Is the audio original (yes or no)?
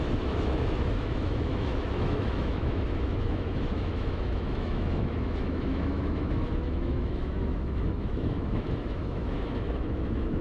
no